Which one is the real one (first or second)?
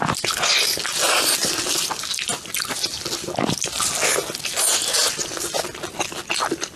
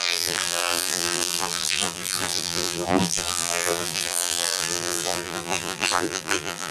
first